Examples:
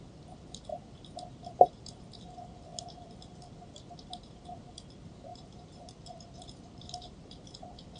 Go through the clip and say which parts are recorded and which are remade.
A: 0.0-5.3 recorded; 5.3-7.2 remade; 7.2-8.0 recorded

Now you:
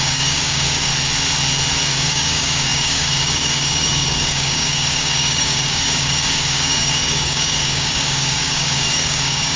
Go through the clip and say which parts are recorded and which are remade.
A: 0.0-0.9 remade; 0.9-1.9 recorded; 1.9-9.6 remade